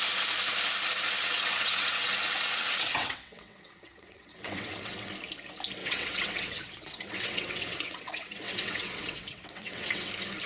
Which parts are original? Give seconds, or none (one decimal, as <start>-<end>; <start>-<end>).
0.0-1.2; 5.1-5.8; 10.1-10.5